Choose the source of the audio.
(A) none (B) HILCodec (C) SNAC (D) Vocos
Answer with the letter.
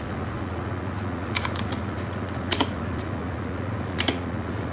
D